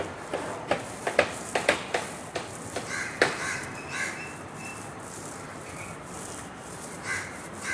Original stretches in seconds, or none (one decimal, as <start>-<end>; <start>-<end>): none